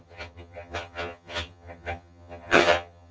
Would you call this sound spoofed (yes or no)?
yes